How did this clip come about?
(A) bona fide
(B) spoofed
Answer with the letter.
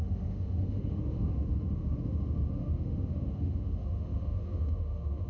B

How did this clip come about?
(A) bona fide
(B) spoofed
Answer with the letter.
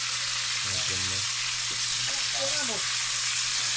A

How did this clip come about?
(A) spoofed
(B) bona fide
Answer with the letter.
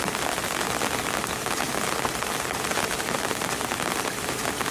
B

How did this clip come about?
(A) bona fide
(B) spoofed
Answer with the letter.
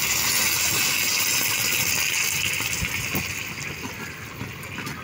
A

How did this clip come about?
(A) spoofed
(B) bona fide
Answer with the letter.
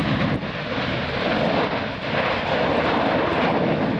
B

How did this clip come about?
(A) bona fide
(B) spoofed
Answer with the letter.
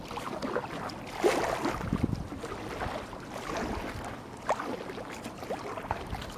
A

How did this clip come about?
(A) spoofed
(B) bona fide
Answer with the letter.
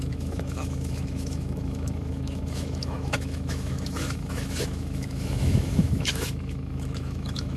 A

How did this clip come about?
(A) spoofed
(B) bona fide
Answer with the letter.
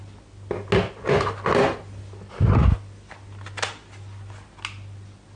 B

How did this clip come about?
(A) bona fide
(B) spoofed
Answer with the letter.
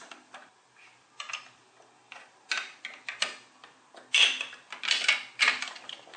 A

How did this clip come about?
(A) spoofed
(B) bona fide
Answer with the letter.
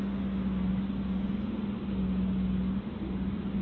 B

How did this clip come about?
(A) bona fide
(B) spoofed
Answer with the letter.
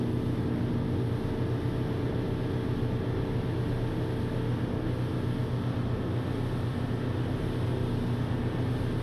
A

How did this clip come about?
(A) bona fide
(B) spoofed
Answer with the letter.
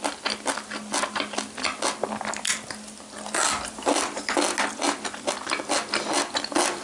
A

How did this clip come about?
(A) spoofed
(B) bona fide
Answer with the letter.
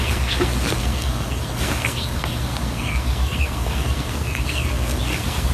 A